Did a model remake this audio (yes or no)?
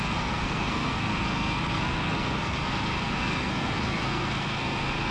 yes